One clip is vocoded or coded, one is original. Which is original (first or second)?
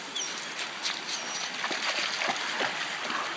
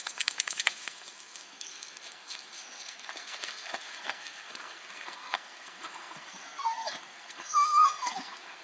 first